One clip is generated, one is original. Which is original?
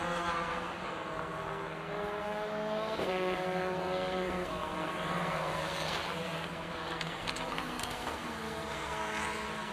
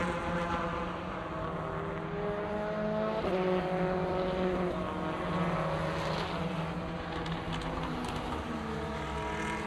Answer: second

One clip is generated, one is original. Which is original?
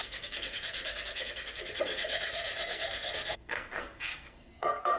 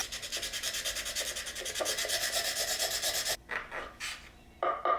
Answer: second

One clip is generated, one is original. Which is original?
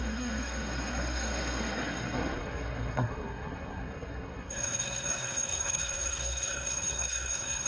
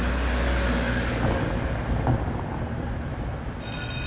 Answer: second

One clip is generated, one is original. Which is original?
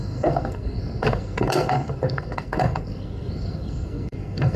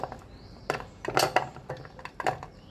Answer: second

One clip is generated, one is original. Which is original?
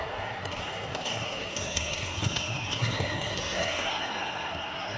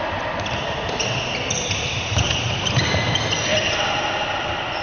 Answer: second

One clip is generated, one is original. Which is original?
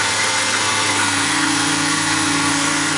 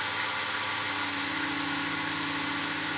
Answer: second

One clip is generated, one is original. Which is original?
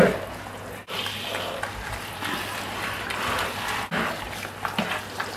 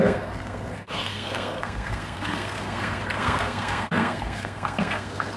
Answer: first